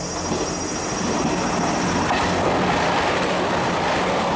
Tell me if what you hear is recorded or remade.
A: recorded